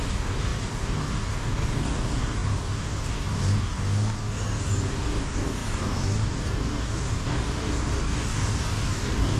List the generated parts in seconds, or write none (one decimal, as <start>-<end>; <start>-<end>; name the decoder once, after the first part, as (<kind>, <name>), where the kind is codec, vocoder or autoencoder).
0.0-9.4 (codec, DAC)